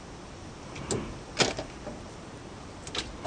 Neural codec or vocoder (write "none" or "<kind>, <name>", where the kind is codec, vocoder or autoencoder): none